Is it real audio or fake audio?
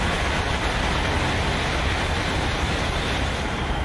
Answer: real